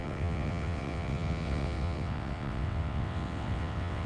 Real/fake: fake